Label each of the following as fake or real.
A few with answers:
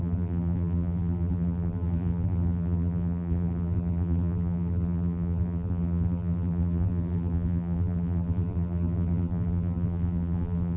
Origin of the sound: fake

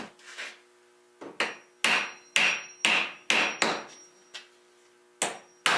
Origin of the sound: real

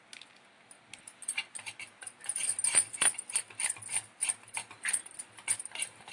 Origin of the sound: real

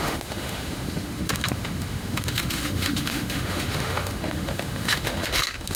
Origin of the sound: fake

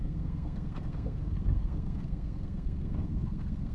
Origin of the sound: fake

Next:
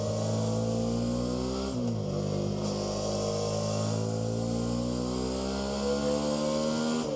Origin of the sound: real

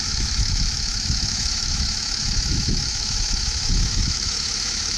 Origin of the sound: fake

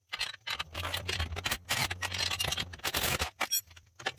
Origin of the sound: fake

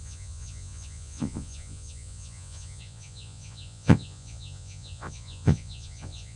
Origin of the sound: fake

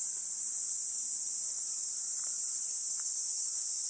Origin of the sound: fake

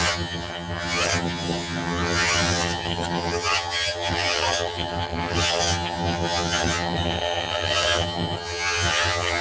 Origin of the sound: fake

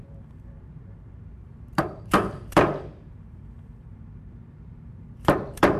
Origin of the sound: fake